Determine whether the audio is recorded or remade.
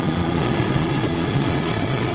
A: remade